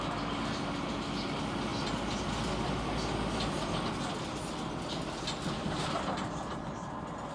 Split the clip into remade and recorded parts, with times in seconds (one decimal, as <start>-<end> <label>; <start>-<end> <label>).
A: 0.0-1.7 recorded; 1.7-3.5 remade; 3.5-7.3 recorded